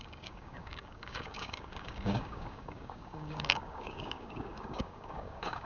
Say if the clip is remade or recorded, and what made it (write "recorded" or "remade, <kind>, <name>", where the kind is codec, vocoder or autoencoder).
remade, codec, DAC